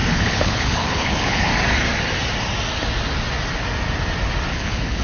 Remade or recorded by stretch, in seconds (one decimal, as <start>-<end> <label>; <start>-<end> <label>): 0.0-1.5 remade; 1.5-4.5 recorded; 4.5-5.0 remade